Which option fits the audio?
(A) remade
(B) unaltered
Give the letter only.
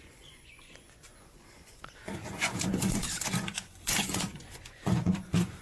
A